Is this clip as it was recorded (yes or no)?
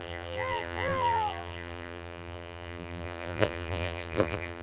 no